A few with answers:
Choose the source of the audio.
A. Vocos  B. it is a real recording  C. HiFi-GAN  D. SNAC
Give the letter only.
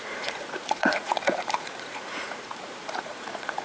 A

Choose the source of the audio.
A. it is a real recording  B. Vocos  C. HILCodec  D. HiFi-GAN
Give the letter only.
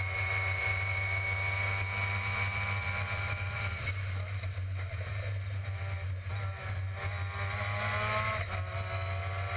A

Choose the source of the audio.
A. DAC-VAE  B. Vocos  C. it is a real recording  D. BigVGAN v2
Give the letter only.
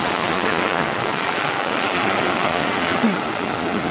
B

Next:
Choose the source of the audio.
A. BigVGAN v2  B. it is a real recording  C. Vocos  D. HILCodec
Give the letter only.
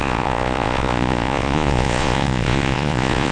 C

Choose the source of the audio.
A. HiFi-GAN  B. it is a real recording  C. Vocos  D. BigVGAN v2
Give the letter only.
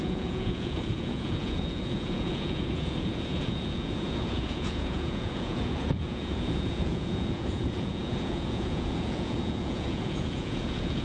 C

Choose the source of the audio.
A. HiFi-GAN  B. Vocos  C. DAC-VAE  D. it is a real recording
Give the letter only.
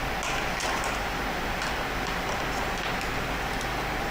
D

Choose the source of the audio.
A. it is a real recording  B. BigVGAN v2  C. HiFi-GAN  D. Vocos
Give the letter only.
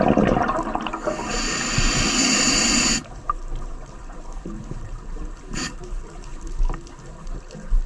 A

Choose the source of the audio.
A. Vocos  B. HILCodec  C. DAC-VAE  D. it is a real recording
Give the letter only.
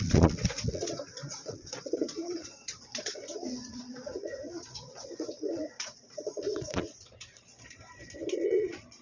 A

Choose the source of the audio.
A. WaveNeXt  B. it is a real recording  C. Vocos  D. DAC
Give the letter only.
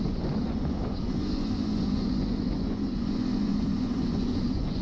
C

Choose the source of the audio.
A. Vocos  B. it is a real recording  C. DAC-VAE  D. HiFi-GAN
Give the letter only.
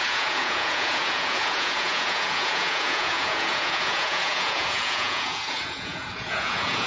A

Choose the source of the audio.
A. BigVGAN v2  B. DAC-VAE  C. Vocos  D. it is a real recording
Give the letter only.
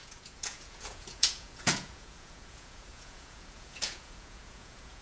C